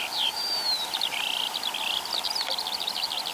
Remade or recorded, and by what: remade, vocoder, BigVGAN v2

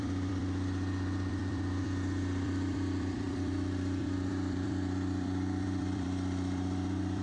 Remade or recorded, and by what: remade, vocoder, BigVGAN v2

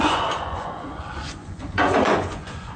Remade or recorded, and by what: remade, vocoder, Vocos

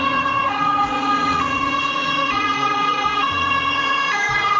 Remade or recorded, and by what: remade, vocoder, Vocos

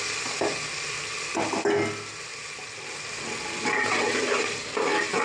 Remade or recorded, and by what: recorded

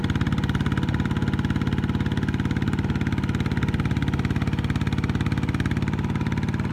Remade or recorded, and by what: recorded